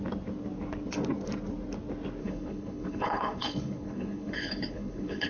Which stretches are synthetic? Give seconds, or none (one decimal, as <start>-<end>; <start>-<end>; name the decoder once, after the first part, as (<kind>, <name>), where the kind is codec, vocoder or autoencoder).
2.2-5.3 (codec, HILCodec)